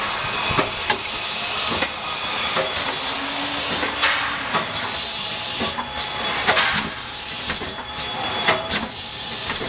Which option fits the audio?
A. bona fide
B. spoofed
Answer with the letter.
A